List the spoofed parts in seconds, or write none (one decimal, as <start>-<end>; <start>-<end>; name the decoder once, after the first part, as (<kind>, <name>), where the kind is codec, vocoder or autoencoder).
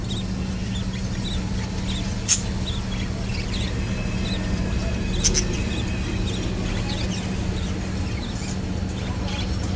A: none